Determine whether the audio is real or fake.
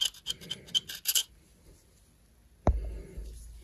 real